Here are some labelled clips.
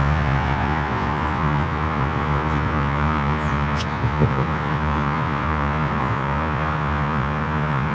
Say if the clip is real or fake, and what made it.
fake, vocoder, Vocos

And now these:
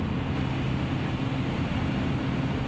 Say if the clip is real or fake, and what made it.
real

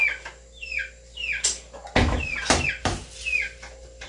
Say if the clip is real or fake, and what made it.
real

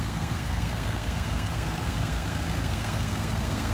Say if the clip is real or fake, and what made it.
fake, codec, SNAC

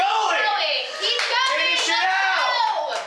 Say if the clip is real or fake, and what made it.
real